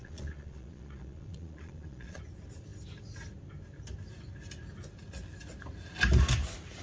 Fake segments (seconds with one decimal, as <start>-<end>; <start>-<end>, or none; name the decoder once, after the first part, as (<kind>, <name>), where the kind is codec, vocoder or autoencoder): 0.0-2.2 (vocoder, Vocos)